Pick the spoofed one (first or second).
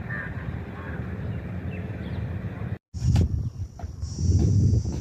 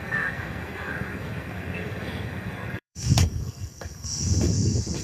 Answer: second